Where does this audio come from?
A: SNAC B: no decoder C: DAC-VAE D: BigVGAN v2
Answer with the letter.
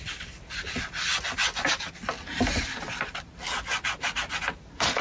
B